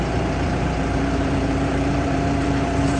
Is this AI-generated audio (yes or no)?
yes